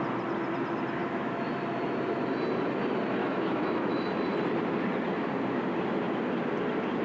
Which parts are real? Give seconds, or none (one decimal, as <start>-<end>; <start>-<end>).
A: 0.0-1.0; 1.5-3.2; 4.1-7.0

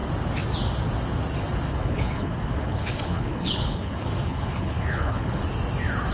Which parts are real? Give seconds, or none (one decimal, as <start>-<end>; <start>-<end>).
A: 0.0-1.7; 5.4-6.1